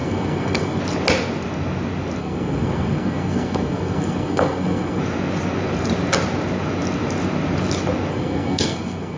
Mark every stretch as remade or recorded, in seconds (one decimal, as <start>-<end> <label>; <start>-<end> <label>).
0.0-0.8 remade; 0.8-2.2 recorded; 2.2-5.0 remade; 5.0-8.1 recorded; 8.1-9.2 remade